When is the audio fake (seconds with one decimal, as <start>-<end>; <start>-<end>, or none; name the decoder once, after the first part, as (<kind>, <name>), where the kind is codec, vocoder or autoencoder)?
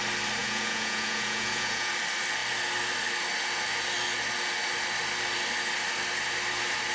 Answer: 0.4-1.9 (vocoder, Vocos)